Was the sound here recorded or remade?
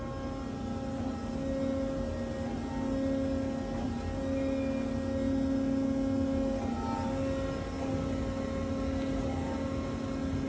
recorded